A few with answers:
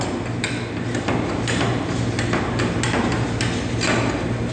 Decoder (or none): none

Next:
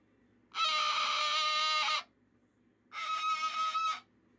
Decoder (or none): none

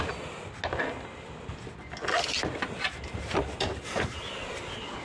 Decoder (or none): none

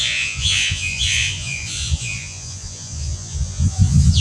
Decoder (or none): vocoder, Vocos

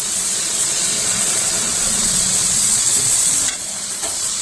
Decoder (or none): vocoder, Vocos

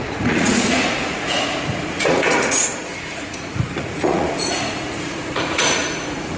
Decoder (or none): vocoder, Vocos